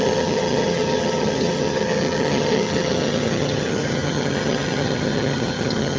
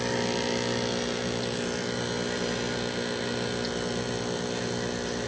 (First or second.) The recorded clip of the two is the second